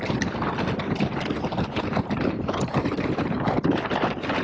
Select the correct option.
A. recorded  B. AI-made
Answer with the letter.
A